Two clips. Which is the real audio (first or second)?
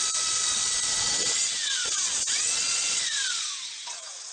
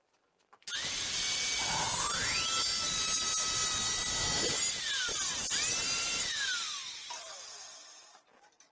second